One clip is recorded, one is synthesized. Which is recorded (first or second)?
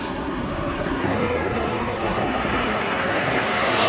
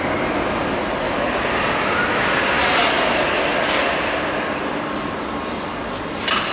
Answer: second